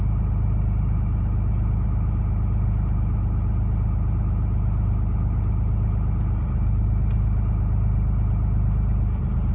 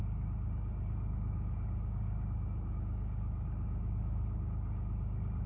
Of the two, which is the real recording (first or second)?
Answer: first